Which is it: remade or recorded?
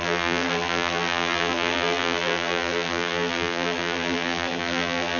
remade